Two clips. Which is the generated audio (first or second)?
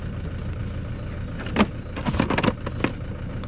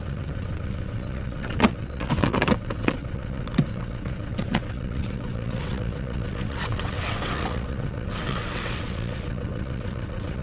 second